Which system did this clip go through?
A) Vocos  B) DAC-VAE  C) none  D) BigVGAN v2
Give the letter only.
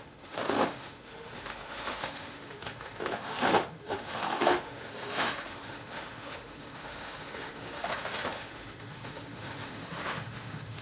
B